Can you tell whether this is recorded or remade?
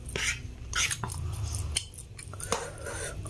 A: recorded